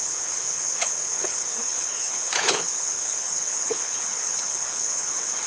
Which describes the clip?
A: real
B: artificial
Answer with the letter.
B